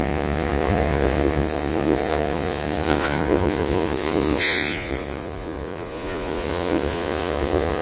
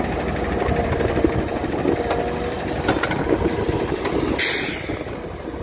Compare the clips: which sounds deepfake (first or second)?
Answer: first